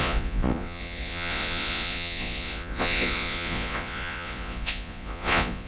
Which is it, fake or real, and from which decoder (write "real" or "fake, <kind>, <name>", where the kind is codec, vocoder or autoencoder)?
fake, vocoder, Vocos